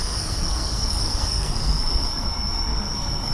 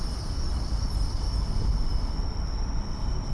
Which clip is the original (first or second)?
second